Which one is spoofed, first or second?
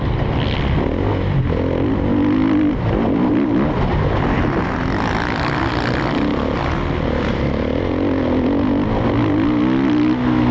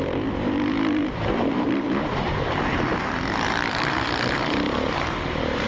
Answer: second